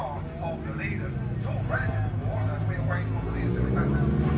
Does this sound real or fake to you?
real